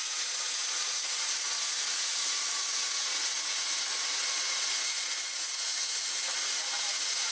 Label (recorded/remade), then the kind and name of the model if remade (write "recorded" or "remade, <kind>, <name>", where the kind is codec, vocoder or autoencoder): remade, vocoder, Vocos